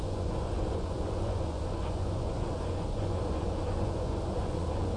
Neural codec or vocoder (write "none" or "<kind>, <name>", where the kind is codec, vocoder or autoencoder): vocoder, Vocos